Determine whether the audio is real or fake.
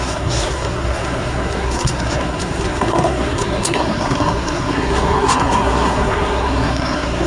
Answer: fake